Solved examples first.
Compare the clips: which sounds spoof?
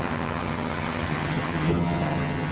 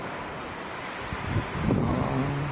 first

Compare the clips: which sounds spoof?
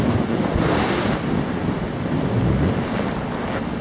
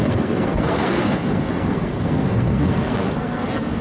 second